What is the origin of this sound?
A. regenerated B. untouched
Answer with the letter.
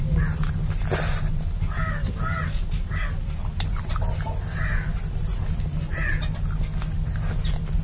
B